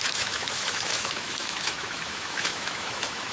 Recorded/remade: remade